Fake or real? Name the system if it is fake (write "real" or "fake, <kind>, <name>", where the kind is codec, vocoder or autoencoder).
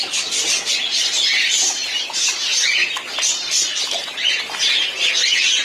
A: real